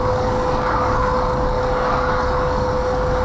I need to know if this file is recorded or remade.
remade